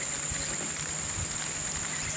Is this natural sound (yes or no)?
yes